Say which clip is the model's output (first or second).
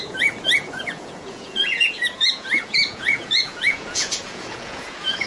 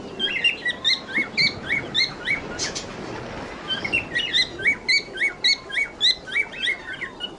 first